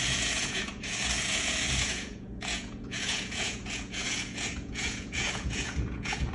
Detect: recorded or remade remade